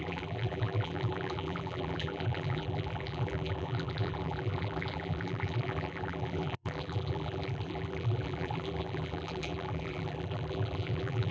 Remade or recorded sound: remade